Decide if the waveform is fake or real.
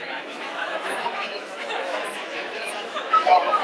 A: fake